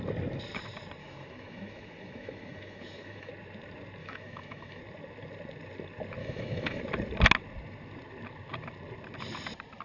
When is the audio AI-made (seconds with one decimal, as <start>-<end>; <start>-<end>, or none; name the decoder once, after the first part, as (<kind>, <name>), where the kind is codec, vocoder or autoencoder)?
1.0-3.3 (autoencoder, DAC-VAE); 4.0-4.8; 6.2-6.8